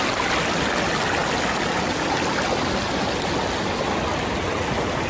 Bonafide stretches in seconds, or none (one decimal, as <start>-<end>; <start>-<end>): 0.0-5.1